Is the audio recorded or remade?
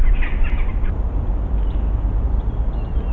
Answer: recorded